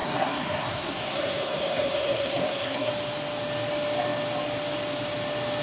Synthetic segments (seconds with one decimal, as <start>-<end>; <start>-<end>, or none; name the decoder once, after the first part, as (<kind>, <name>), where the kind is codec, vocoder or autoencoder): 0.0-2.9 (codec, SNAC)